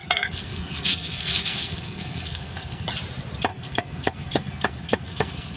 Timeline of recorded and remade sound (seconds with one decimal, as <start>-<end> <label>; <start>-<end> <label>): 0.0-2.9 remade; 2.9-3.5 recorded; 3.5-5.6 remade